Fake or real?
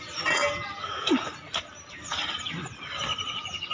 real